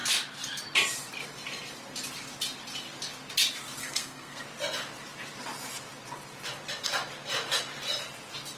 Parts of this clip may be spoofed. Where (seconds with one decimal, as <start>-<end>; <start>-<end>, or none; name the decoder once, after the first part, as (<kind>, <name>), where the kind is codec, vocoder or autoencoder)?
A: 3.8-4.4 (codec, SNAC)